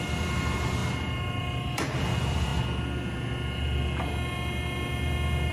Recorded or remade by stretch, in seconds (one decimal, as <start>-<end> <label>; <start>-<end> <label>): 0.0-5.5 recorded